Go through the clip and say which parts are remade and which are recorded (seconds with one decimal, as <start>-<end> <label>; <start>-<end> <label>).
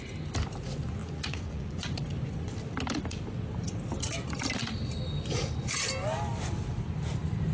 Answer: 0.0-1.0 recorded; 1.0-2.5 remade; 2.5-7.5 recorded